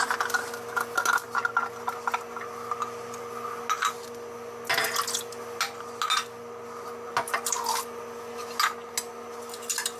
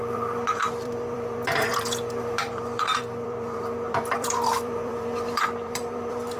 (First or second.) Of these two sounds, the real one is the first